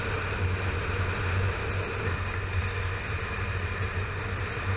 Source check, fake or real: real